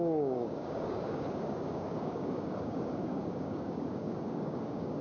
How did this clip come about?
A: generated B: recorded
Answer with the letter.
A